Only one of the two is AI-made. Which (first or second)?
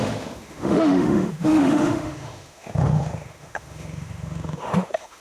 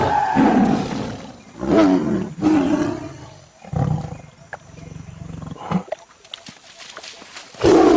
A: first